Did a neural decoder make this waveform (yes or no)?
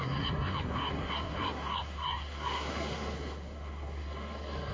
yes